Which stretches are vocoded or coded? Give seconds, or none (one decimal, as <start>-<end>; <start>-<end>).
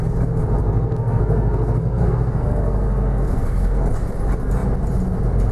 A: 0.6-3.9